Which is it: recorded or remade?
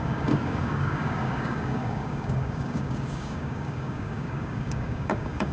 remade